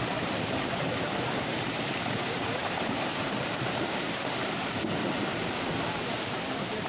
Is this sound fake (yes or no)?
yes